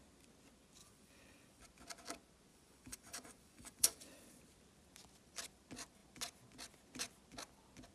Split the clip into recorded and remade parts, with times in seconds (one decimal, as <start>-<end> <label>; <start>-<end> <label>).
0.0-0.8 recorded; 0.8-1.6 remade; 1.6-2.5 recorded; 2.5-4.4 remade; 4.4-7.9 recorded